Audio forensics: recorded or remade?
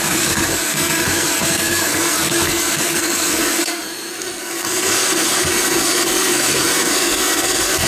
remade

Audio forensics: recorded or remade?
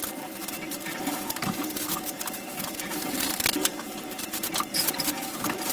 remade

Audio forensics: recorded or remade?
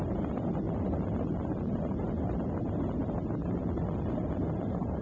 remade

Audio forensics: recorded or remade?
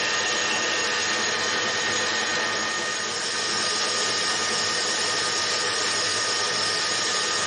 recorded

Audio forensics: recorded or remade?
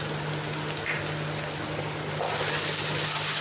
recorded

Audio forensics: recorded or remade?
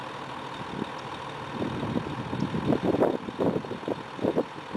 recorded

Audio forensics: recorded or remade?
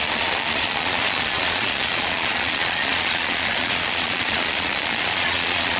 remade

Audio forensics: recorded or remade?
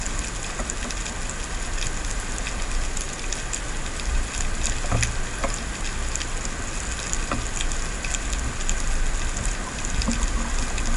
recorded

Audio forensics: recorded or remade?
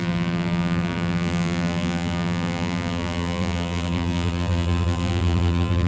remade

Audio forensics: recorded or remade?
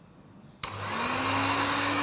recorded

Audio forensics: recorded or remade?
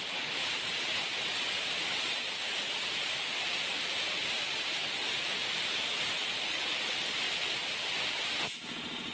recorded